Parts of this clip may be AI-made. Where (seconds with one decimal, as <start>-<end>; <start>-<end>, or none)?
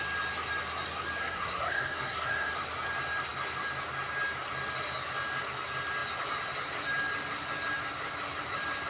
1.2-2.5